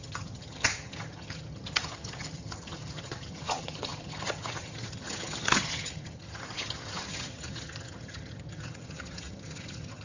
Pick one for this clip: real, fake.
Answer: fake